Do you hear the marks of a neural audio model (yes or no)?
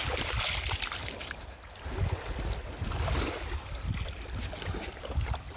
no